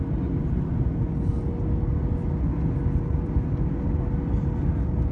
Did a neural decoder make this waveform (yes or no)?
no